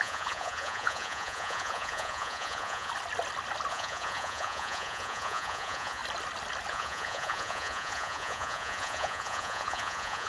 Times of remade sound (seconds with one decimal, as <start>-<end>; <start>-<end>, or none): 0.0-2.9; 3.7-6.0; 6.7-10.3